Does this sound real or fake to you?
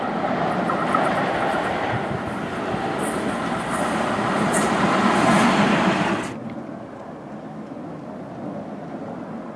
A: real